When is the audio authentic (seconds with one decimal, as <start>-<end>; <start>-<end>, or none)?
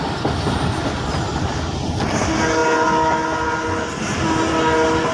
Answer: 0.0-5.1